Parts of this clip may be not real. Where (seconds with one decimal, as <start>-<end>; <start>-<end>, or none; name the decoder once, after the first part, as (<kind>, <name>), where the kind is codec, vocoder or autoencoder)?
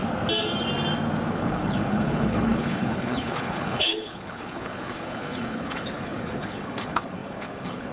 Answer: 1.3-7.9 (codec, HILCodec)